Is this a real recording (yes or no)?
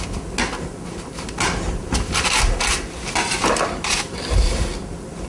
yes